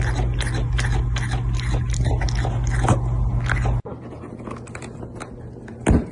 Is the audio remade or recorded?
recorded